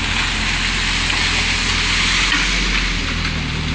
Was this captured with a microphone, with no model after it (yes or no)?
yes